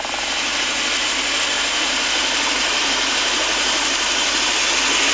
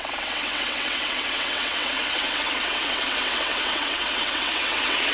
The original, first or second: first